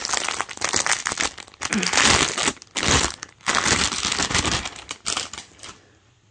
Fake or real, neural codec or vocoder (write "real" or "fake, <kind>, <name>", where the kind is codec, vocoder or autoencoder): real